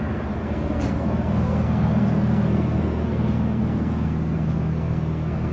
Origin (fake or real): fake